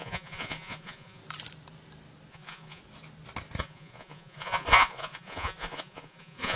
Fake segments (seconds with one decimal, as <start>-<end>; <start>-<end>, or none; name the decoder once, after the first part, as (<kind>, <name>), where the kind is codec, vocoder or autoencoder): 0.0-1.2 (vocoder, Vocos); 2.3-2.8; 3.6-6.6